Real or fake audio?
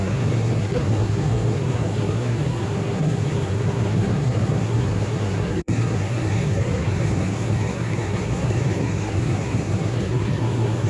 fake